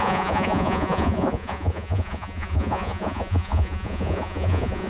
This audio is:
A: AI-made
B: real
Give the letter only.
A